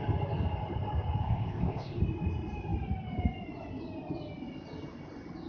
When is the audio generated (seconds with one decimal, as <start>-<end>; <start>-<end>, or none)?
1.2-2.0